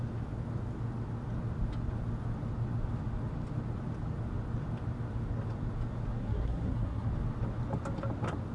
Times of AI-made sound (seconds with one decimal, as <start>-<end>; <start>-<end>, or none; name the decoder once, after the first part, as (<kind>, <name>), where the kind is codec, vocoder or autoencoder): 6.2-7.1 (codec, SNAC)